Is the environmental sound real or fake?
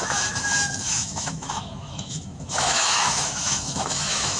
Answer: fake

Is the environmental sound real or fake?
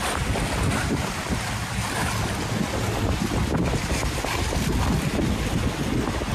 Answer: real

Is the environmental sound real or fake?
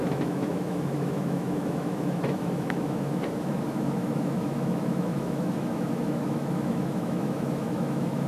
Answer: fake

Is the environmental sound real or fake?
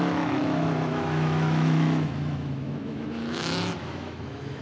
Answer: fake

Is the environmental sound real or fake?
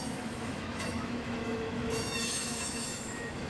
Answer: fake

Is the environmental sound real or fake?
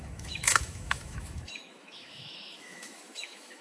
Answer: fake